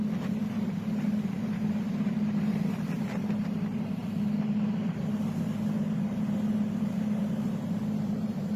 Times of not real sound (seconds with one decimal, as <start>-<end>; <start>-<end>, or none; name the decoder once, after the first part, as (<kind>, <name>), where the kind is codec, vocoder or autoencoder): none